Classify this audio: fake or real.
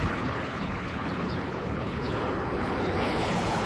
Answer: fake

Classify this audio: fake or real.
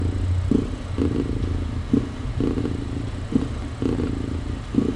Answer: real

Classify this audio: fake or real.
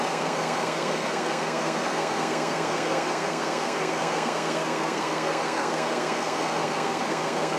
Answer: fake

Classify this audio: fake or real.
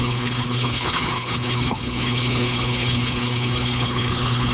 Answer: fake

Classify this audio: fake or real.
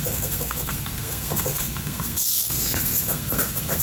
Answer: fake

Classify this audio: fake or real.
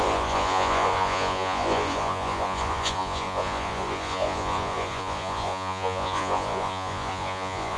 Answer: fake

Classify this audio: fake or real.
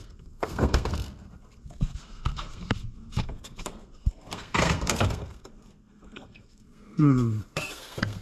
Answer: fake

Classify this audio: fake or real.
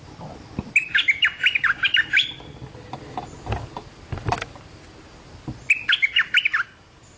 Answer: real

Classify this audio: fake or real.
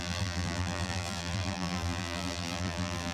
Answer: fake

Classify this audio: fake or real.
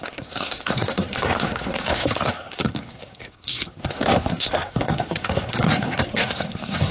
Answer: fake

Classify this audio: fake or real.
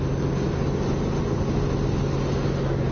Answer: real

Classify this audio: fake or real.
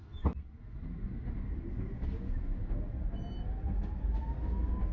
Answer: real